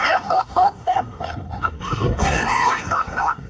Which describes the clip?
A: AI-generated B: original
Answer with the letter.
A